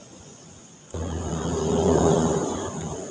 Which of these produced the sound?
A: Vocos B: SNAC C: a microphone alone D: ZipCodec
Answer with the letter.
A